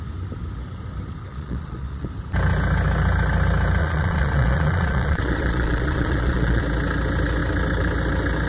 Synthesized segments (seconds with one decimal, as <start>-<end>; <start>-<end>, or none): 1.3-2.1; 3.8-6.6